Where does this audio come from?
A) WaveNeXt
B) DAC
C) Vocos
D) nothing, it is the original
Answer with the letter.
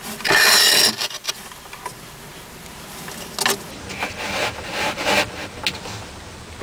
D